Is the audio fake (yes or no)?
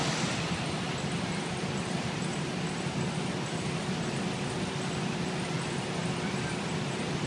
yes